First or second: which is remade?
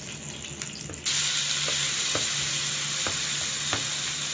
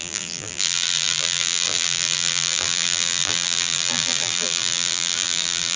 second